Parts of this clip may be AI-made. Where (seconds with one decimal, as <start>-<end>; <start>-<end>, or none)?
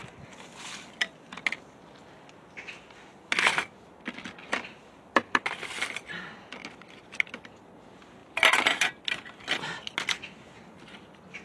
none